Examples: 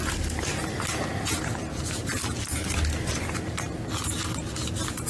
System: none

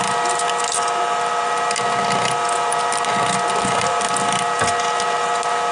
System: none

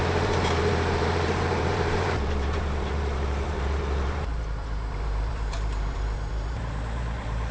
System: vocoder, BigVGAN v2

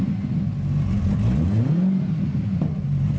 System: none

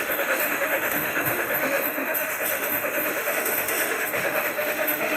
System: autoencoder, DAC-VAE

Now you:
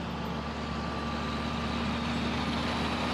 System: none